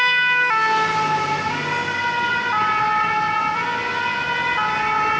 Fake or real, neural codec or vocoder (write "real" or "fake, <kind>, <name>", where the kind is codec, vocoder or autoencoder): real